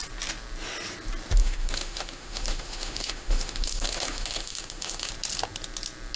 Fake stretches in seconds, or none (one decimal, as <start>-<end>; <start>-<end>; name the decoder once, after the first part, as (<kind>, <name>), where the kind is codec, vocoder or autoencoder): 1.4-5.1 (autoencoder, DAC-VAE)